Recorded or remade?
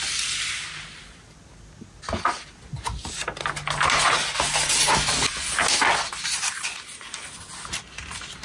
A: recorded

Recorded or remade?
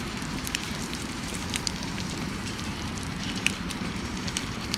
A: remade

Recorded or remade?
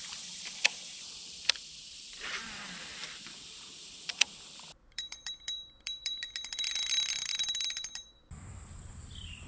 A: remade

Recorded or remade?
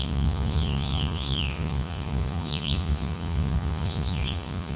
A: remade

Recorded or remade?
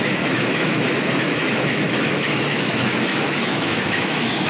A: remade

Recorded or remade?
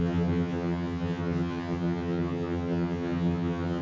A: remade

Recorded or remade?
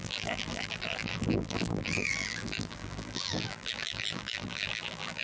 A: remade